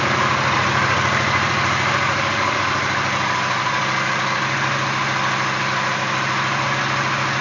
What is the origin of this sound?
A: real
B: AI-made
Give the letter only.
B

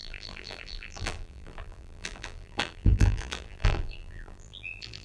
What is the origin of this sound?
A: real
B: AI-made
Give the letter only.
B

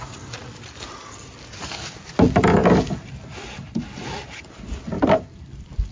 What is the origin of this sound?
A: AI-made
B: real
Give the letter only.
B